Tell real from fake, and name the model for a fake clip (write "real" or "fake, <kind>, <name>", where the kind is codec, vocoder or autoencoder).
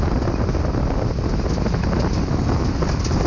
real